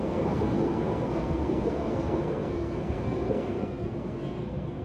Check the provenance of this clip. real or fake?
fake